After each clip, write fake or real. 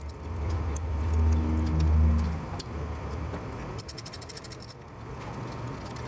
real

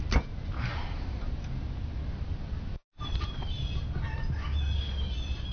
real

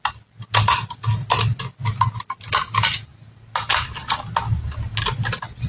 real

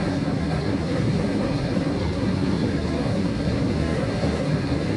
fake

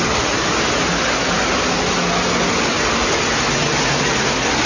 real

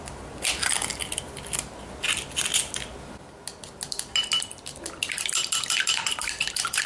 real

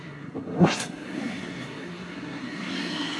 fake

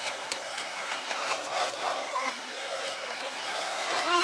fake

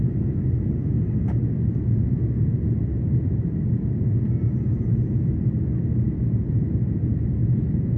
real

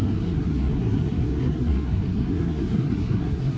fake